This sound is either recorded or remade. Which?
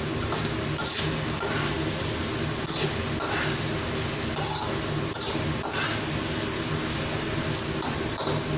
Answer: recorded